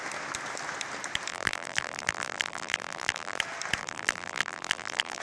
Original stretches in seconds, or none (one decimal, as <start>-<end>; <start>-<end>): 0.0-1.3; 3.4-3.8